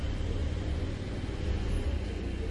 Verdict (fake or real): fake